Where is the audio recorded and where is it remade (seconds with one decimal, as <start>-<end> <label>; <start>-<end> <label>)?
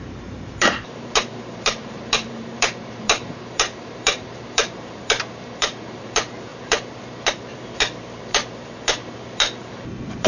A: 0.0-10.3 remade